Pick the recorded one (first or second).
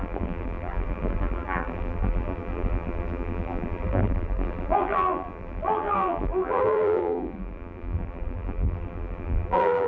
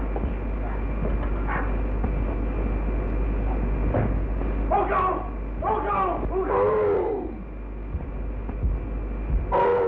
second